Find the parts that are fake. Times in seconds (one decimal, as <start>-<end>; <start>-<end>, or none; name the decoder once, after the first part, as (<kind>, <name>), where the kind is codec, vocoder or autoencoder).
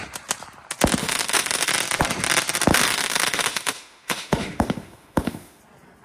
1.0-1.7 (autoencoder, DAC-VAE); 2.7-5.6